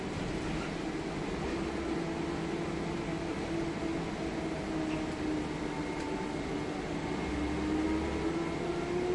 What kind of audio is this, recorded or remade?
recorded